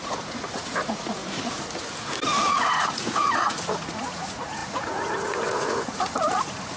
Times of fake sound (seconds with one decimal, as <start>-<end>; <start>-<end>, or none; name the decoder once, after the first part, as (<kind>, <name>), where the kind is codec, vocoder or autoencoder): 0.0-1.2 (vocoder, Vocos); 2.5-6.8